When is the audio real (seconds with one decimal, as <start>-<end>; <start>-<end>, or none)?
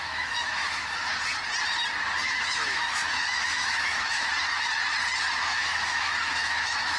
1.1-2.2; 4.3-5.4